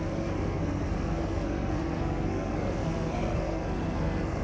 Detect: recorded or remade remade